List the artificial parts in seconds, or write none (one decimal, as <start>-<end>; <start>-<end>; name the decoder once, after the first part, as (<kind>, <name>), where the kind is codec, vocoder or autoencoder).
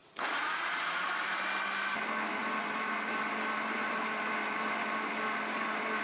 0.0-1.0 (vocoder, Vocos)